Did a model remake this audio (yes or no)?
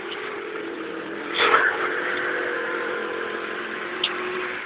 yes